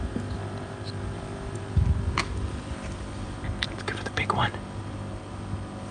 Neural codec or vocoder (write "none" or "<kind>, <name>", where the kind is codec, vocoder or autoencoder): none